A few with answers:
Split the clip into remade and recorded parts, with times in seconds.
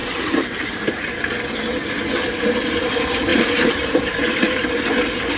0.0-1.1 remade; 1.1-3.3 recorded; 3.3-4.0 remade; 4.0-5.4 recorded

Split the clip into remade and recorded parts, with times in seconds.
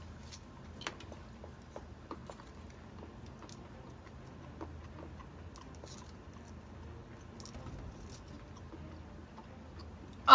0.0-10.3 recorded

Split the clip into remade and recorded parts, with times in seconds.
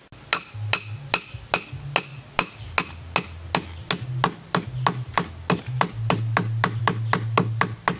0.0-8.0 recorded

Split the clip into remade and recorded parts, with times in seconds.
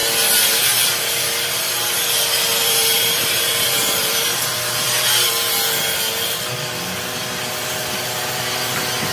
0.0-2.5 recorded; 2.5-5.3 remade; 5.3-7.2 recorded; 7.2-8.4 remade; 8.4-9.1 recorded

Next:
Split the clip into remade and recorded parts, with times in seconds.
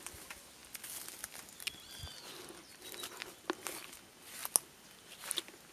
0.0-5.7 recorded